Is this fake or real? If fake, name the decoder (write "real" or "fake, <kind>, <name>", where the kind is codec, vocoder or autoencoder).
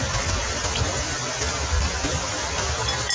real